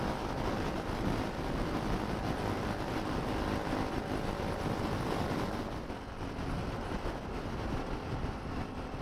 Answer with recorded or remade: recorded